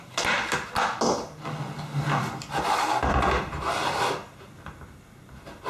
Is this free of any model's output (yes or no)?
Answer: yes